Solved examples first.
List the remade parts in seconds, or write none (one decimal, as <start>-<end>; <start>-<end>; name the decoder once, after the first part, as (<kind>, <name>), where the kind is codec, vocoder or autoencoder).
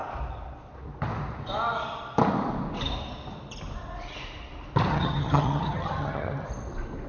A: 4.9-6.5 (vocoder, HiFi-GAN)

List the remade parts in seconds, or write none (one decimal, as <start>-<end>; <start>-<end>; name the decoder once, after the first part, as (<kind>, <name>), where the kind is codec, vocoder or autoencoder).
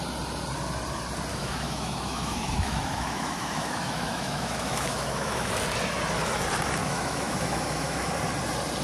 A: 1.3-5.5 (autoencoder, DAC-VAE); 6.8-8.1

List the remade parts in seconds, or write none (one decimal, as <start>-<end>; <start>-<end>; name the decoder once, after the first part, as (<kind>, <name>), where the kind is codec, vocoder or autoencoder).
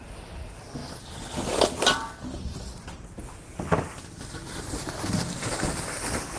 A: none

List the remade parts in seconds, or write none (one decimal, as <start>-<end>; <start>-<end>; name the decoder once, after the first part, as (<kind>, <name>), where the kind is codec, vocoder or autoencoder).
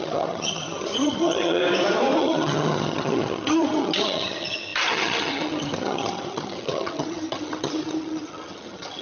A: 0.0-1.6 (vocoder, HiFi-GAN); 2.2-9.0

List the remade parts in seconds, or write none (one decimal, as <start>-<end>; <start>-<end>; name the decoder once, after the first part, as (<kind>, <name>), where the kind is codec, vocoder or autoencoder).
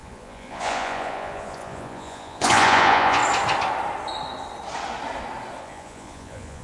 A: 0.0-3.2 (vocoder, Vocos); 5.6-6.6